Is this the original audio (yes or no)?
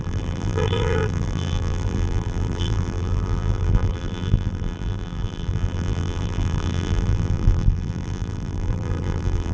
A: no